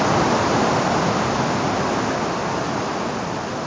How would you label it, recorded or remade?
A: recorded